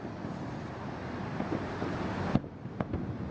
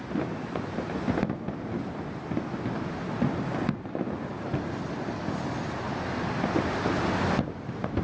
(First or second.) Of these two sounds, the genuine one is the second